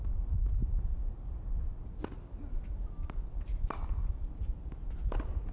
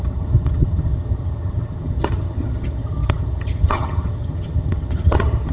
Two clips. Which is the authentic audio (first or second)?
first